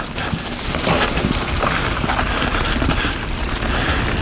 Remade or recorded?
recorded